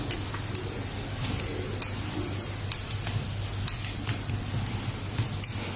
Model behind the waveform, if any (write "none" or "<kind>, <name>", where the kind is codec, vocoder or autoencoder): none